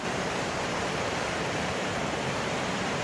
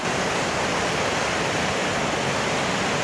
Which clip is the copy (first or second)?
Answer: first